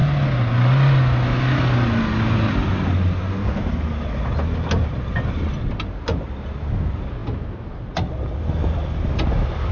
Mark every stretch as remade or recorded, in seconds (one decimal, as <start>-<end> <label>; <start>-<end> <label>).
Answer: 0.0-9.7 recorded